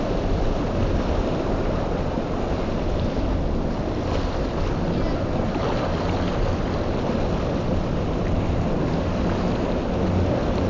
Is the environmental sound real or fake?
real